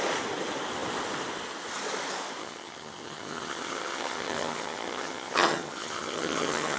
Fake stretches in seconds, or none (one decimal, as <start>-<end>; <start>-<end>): 2.4-6.8